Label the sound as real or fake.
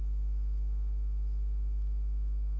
real